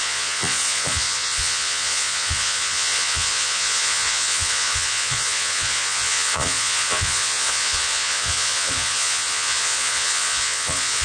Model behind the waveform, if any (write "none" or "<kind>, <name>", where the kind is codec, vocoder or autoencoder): vocoder, Vocos